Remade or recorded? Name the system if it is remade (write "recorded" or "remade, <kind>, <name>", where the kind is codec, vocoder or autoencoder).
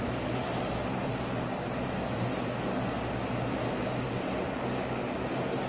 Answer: recorded